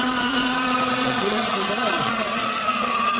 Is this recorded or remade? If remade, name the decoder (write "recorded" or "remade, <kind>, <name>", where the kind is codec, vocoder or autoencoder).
remade, vocoder, Vocos